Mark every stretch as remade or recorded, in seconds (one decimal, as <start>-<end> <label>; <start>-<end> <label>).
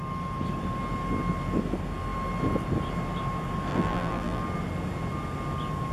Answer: 0.0-3.7 recorded; 3.7-4.4 remade; 4.4-5.9 recorded